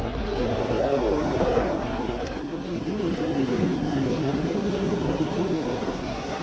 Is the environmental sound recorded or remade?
remade